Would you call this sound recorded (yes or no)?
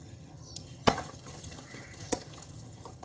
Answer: no